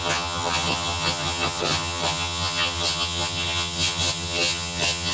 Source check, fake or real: fake